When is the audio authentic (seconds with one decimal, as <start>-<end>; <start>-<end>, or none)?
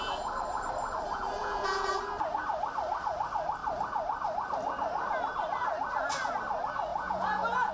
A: 0.0-1.4; 2.0-6.9